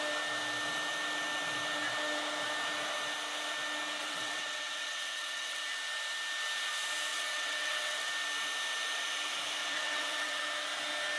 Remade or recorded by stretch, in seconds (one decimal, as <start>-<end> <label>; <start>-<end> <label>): 0.0-4.0 recorded; 4.0-5.6 remade; 5.6-7.1 recorded; 7.1-8.1 remade; 8.1-9.6 recorded; 9.6-10.4 remade; 10.4-11.2 recorded